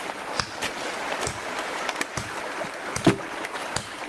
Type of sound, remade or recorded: recorded